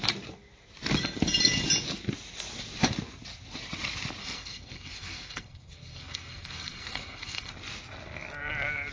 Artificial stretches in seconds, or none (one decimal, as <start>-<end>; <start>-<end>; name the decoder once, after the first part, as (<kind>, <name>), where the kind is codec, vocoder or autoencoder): 4.2-7.5 (codec, SNAC)